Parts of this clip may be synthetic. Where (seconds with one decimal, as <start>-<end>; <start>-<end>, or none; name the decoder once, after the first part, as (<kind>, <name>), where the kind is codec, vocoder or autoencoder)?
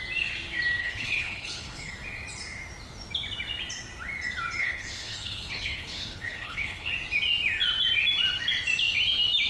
0.8-1.9 (codec, HILCodec); 4.6-6.9